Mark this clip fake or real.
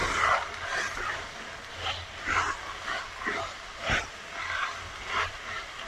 real